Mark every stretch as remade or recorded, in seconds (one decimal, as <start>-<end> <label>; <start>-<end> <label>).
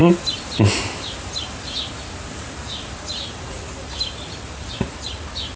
0.0-5.6 recorded